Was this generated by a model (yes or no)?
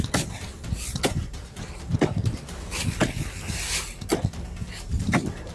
yes